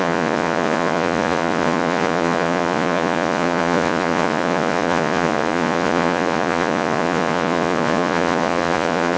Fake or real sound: fake